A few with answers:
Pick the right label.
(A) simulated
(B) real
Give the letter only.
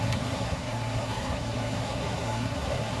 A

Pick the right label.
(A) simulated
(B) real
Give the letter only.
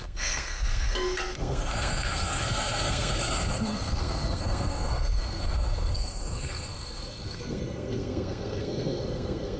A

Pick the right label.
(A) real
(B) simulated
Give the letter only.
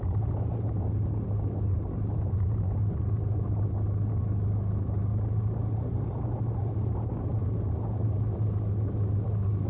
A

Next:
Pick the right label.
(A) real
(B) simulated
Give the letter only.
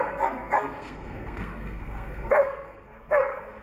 B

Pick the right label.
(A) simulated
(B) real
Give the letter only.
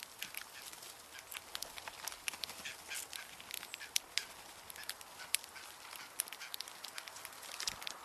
B